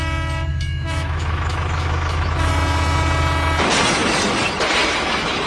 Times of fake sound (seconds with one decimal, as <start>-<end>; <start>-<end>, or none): 0.5-2.5